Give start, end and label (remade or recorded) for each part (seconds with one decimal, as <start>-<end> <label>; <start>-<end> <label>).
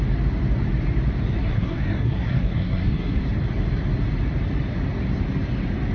0.0-1.4 recorded; 1.4-3.2 remade; 3.2-5.9 recorded